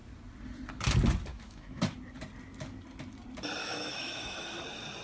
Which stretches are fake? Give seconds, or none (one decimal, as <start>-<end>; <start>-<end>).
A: 1.3-1.8; 3.6-4.6